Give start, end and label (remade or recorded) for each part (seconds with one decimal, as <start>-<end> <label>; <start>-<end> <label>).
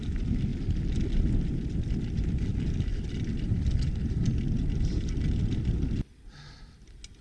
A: 0.0-7.2 recorded